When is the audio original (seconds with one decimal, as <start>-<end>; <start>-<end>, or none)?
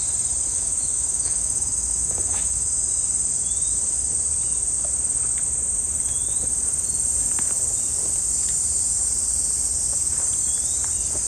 0.0-0.5; 2.6-11.3